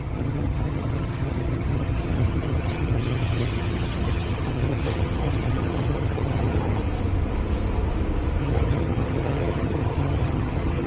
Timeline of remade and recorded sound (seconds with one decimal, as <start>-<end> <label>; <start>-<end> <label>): 0.0-6.8 remade; 6.8-8.4 recorded; 8.4-10.9 remade